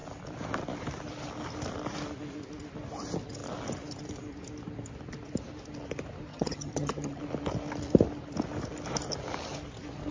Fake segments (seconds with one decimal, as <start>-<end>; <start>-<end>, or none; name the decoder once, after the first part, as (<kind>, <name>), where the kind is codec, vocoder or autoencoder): 6.3-7.2 (vocoder, HiFi-GAN)